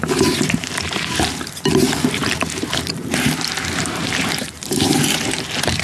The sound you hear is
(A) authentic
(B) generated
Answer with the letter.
B